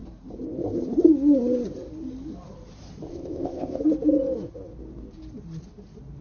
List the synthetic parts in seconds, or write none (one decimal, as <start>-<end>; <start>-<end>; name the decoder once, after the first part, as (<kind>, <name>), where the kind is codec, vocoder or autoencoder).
3.1-3.8 (codec, ZipCodec)